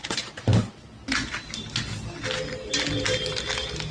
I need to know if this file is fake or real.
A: real